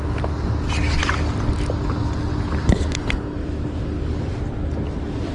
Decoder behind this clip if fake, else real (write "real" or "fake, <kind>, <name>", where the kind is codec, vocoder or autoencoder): real